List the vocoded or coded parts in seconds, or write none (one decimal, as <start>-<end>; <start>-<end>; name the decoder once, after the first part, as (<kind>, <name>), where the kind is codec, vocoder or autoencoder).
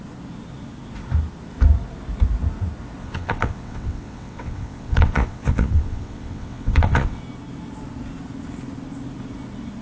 3.0-7.2 (vocoder, WaveNeXt)